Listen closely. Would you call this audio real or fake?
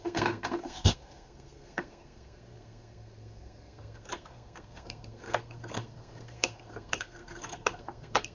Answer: fake